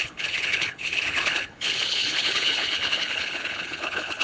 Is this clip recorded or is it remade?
remade